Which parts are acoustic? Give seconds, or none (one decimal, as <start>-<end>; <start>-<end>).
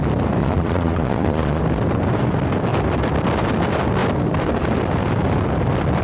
0.0-0.4; 1.6-6.0